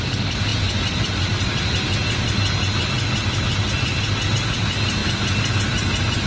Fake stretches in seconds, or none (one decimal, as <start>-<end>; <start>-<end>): none